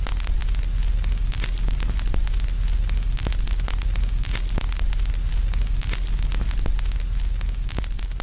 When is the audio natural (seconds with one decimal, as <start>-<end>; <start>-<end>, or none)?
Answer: 0.0-8.2